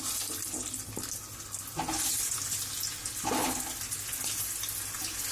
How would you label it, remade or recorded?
recorded